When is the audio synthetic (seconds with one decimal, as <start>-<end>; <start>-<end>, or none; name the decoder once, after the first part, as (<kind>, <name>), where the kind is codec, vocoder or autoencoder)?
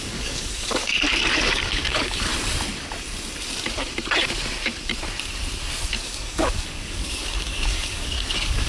0.0-2.3 (codec, DAC); 5.9-8.7